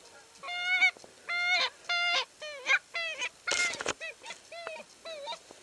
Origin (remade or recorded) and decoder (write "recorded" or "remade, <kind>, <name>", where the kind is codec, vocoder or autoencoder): recorded